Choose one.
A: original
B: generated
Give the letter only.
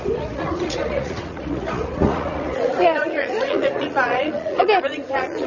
B